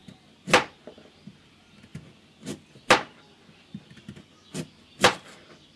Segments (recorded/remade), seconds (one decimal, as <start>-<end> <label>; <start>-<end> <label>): 0.0-5.8 recorded